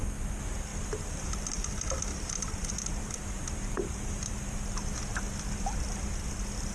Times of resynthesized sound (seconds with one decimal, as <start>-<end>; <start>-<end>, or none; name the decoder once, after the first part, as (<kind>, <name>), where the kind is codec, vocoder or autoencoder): 0.7-1.3 (vocoder, BigVGAN v2); 2.1-5.0